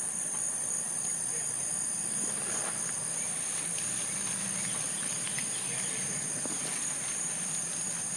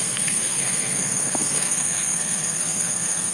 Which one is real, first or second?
first